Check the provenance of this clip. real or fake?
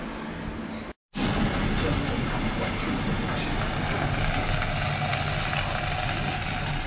real